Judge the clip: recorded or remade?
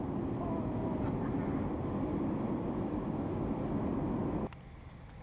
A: recorded